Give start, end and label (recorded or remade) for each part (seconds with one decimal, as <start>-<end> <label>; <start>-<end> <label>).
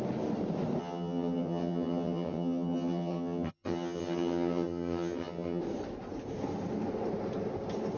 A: 0.0-0.8 recorded; 0.8-5.6 remade; 5.6-8.0 recorded